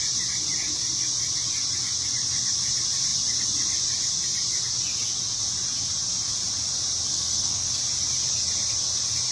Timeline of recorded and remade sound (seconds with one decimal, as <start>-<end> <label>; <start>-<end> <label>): 0.0-7.1 recorded; 7.1-7.8 remade; 7.8-9.3 recorded